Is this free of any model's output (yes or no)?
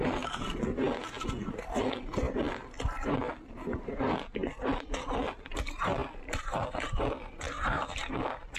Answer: yes